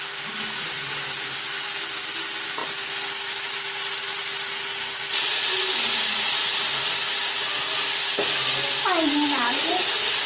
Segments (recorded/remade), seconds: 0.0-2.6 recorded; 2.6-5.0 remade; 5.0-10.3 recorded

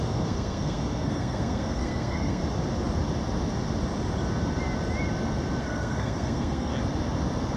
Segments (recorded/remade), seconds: 0.0-2.4 remade; 2.4-5.6 recorded; 5.6-6.7 remade; 6.7-7.6 recorded

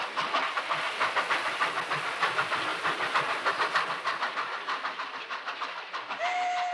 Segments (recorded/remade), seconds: 0.0-2.7 recorded; 2.7-3.5 remade; 3.5-6.7 recorded

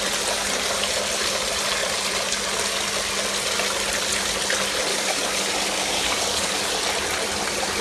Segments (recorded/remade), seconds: 0.0-4.9 recorded; 4.9-6.7 remade; 6.7-7.8 recorded

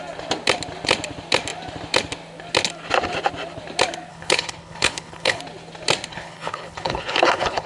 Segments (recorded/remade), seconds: 0.0-4.1 recorded; 4.1-5.4 remade; 5.4-6.1 recorded; 6.1-7.7 remade

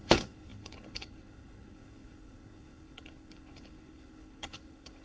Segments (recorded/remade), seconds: 0.0-5.0 remade